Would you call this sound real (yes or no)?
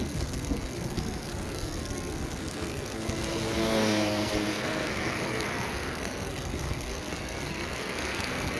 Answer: no